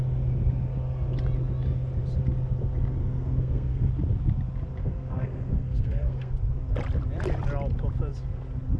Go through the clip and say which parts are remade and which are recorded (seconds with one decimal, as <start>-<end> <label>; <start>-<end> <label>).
0.0-3.0 recorded; 3.0-3.9 remade; 3.9-4.8 recorded; 4.8-6.3 remade; 6.3-8.8 recorded